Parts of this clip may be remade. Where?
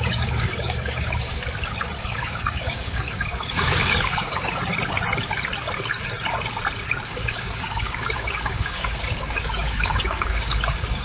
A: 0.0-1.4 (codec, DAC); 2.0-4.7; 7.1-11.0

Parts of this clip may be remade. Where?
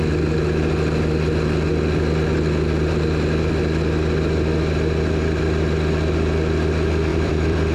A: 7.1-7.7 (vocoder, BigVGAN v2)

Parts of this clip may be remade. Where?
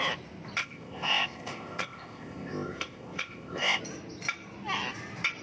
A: 0.6-3.8 (codec, ZipCodec)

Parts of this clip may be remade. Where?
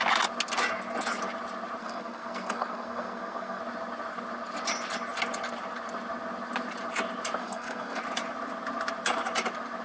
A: 1.8-3.6 (codec, SNAC); 7.4-8.0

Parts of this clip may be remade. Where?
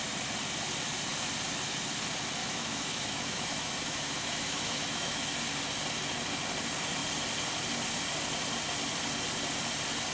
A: 2.4-5.3 (autoencoder, DAC-VAE)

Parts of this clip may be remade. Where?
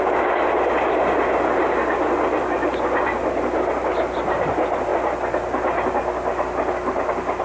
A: none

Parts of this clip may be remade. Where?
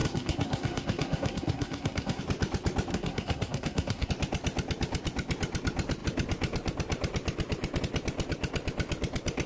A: 0.0-2.2 (codec, SNAC); 2.9-4.1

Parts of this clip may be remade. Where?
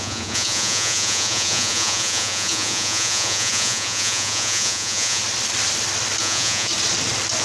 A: 0.0-5.2 (vocoder, Vocos); 6.2-6.7